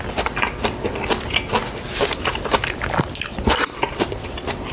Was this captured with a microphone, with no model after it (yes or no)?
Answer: yes